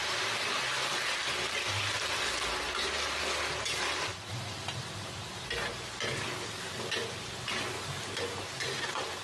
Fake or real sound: real